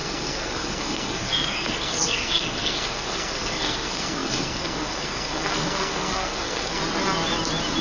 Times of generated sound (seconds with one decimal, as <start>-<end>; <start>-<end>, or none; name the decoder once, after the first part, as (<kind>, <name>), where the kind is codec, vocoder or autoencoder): 0.0-6.8 (codec, SNAC)